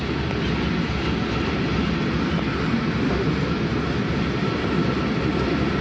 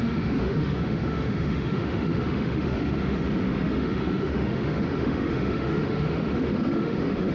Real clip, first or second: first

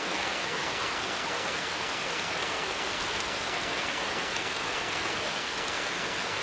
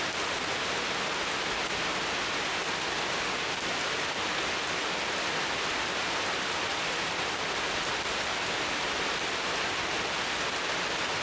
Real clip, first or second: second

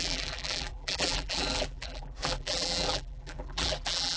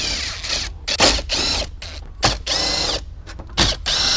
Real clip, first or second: second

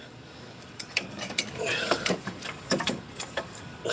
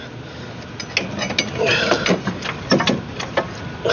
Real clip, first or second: second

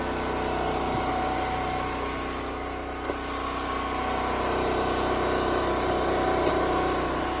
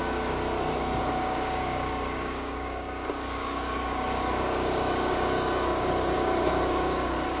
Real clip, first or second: first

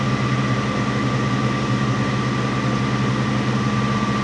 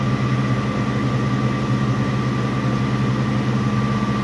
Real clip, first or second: second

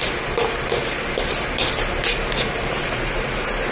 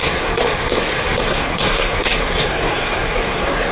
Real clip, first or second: first